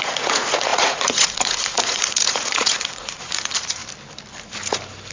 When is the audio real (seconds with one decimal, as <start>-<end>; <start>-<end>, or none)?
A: 3.8-5.1